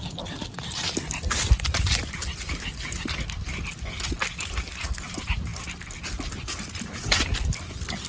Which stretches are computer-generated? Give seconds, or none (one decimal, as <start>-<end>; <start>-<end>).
none